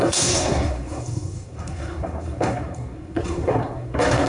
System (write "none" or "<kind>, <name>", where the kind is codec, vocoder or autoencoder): codec, SNAC